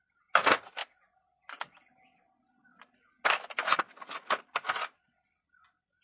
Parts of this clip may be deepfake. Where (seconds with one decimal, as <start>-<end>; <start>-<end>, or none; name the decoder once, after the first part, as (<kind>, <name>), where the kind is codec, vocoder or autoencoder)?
none